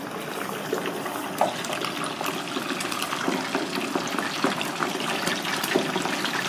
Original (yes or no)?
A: yes